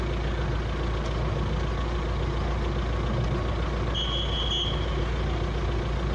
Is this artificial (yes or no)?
no